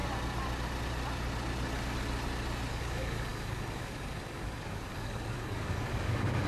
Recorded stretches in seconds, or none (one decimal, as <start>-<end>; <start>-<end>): 0.0-2.7